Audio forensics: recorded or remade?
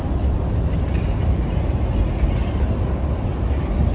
recorded